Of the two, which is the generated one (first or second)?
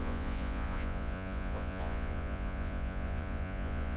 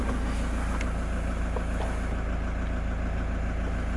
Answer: first